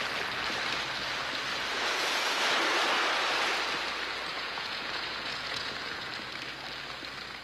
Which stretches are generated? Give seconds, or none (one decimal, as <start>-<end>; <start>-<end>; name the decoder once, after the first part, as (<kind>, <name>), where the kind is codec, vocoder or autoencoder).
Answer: 1.7-2.4 (vocoder, Vocos); 4.3-6.1